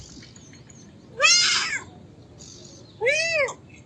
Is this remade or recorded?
recorded